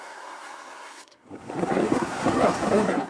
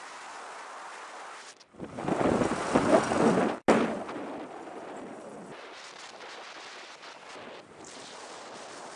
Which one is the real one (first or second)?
second